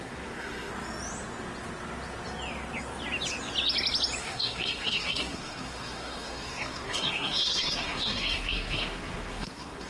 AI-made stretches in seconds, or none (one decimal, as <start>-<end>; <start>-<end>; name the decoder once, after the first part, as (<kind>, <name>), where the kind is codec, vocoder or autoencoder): 0.0-0.7 (codec, SNAC); 4.2-9.9